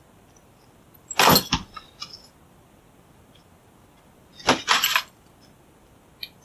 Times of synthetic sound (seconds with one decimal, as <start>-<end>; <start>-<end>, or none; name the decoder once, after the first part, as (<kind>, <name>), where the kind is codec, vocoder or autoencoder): none